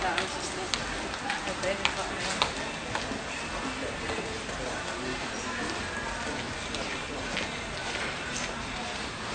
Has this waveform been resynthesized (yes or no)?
no